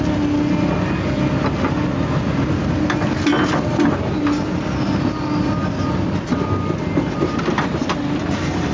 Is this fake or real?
real